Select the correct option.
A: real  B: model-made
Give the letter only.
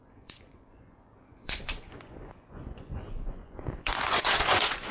B